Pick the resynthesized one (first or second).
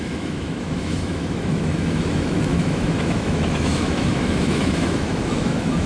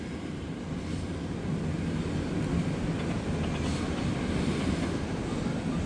first